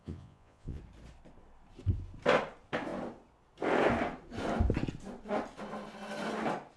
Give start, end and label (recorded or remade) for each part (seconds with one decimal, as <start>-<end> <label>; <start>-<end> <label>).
0.0-0.8 remade; 0.8-6.8 recorded